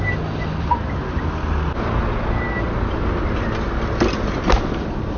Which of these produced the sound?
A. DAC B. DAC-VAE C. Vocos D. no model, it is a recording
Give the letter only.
D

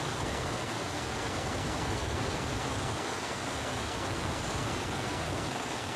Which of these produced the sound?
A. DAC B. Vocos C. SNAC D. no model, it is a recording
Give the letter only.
C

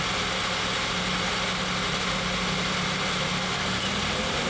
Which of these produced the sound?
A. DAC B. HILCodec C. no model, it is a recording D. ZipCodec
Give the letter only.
C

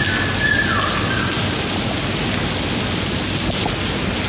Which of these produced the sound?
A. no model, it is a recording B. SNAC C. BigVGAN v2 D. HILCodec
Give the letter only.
A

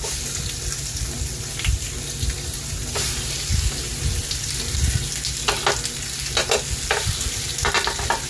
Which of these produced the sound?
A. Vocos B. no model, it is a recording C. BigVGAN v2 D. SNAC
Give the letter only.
B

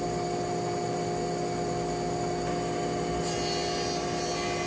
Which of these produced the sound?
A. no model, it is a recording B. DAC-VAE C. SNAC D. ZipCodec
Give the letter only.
A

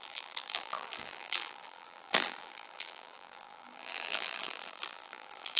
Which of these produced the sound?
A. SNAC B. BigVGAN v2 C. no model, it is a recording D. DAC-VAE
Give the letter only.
B